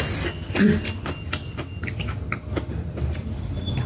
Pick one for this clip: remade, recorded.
recorded